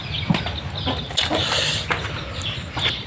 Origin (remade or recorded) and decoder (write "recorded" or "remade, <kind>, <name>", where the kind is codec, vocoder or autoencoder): recorded